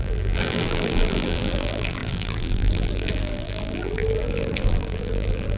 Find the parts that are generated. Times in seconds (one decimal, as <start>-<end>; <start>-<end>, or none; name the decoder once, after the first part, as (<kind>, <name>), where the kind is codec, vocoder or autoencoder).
0.0-5.6 (vocoder, BigVGAN v2)